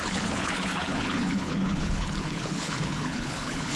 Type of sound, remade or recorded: remade